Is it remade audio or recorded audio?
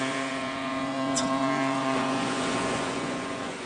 remade